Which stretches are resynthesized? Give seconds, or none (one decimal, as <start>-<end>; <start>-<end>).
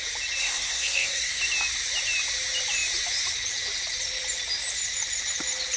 0.4-1.4